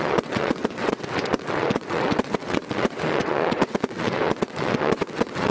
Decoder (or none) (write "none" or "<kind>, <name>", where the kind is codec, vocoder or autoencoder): vocoder, WaveNeXt